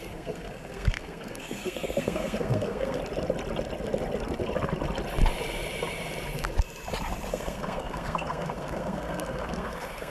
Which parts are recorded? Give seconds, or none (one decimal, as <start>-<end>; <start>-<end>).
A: 3.0-7.3